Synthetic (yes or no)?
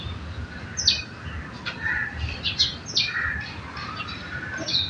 no